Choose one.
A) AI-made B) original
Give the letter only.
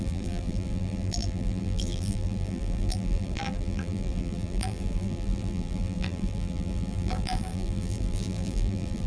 A